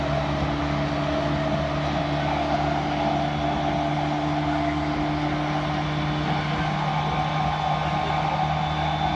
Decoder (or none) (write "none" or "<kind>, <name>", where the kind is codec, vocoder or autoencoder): none